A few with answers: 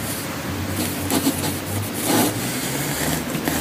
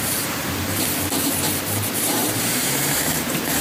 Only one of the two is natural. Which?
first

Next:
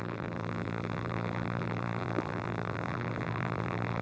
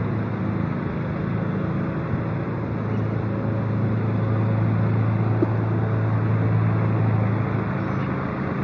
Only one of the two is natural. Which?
second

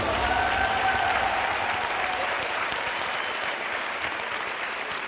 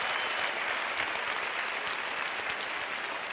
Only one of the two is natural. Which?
second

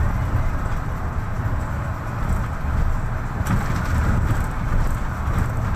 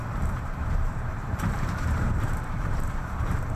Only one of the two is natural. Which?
first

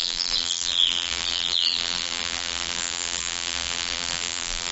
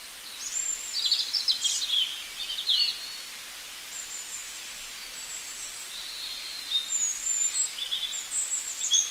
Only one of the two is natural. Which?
second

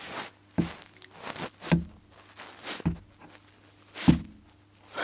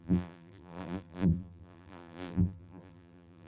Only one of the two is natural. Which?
first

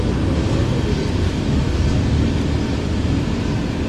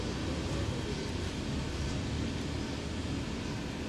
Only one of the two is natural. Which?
second